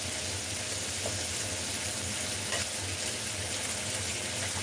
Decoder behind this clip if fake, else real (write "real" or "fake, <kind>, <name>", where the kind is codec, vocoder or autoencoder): real